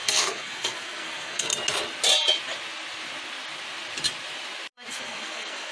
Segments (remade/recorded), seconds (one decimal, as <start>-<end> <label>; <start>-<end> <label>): 0.0-1.5 remade; 1.5-4.9 recorded; 4.9-5.7 remade